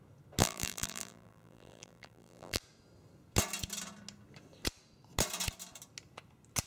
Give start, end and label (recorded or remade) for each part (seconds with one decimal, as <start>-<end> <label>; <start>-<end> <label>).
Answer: 0.0-0.4 recorded; 0.4-2.6 remade; 2.6-6.7 recorded